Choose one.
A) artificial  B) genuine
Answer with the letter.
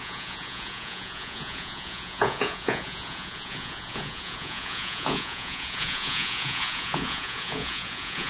A